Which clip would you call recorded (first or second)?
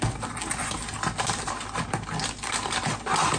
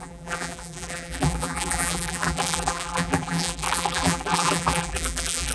first